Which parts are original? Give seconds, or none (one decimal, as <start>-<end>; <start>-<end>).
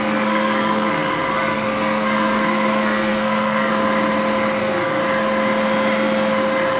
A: 3.7-4.6; 5.0-6.8